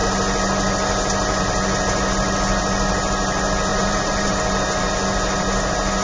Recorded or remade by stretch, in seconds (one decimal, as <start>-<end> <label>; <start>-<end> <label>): 0.0-3.7 recorded; 3.7-4.3 remade; 4.3-6.0 recorded